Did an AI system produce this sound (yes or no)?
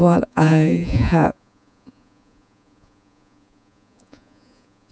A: yes